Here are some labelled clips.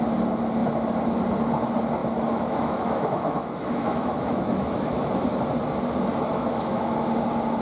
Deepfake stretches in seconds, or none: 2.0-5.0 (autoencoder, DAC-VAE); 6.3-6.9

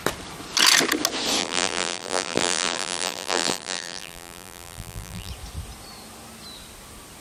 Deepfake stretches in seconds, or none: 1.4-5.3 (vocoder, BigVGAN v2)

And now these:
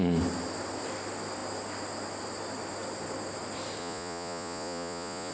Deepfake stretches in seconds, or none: 3.8-5.3 (vocoder, Vocos)

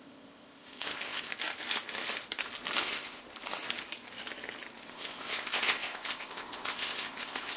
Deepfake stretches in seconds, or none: 0.0-1.3 (codec, ZipCodec); 2.8-3.2; 4.8-7.6

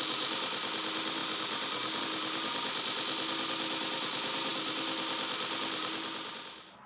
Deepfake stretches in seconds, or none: none

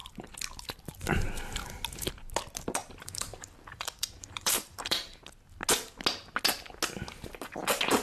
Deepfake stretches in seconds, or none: 2.8-5.2 (vocoder, BigVGAN v2)

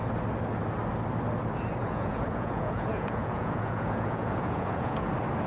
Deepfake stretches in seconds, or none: 1.8-5.1 (vocoder, Vocos)

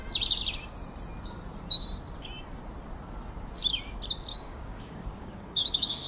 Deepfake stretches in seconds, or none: 4.3-6.1 (codec, DAC)